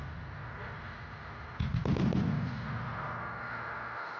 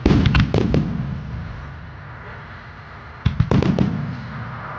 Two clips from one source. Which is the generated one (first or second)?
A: second